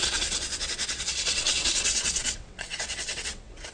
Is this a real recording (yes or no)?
no